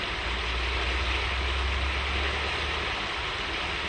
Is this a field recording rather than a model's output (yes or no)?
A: yes